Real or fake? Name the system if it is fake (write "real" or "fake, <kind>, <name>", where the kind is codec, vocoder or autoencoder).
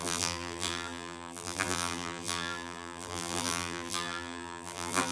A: fake, vocoder, BigVGAN v2